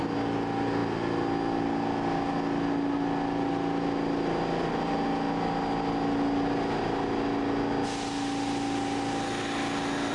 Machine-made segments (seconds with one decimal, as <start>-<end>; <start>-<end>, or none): none